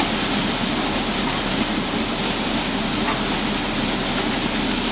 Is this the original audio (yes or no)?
yes